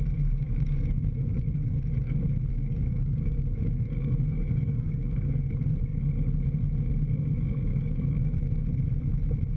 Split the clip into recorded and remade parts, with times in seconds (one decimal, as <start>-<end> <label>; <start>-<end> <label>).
0.0-0.4 recorded; 0.4-1.8 remade; 1.8-2.5 recorded; 2.5-4.9 remade; 4.9-7.7 recorded; 7.7-8.6 remade; 8.6-9.6 recorded